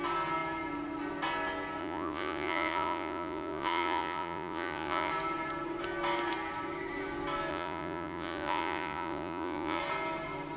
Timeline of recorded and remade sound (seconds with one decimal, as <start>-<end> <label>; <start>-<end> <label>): 0.0-1.8 recorded; 1.8-5.1 remade; 5.1-7.5 recorded; 7.5-9.8 remade; 9.8-10.6 recorded